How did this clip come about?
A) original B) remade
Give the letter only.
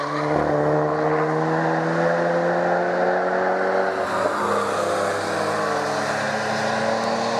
A